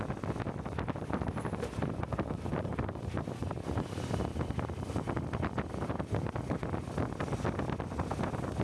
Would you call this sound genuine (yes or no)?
yes